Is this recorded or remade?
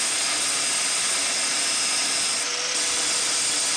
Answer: recorded